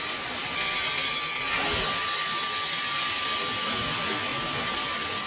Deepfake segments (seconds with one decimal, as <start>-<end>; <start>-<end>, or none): none

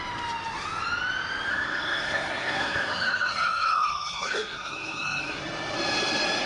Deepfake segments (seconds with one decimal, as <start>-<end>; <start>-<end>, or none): 1.5-5.4

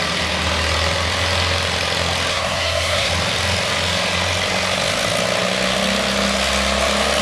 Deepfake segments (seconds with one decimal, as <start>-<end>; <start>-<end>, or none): 2.3-3.1

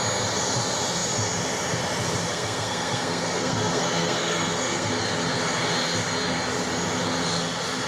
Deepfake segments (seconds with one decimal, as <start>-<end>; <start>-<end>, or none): 2.3-4.9

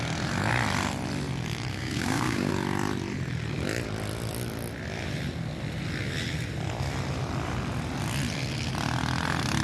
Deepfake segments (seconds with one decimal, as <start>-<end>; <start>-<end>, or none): 1.7-2.5

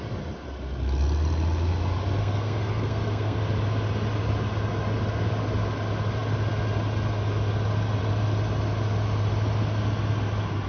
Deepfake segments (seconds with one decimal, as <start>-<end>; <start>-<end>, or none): 2.2-3.4

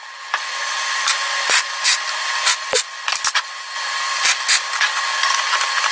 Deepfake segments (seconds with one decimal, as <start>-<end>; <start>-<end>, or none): none